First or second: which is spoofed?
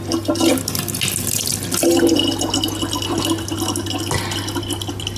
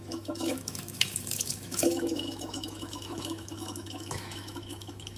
second